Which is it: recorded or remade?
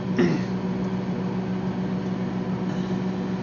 recorded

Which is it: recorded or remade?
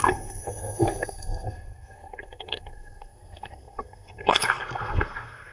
remade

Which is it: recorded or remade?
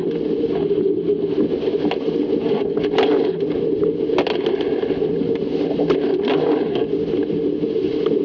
recorded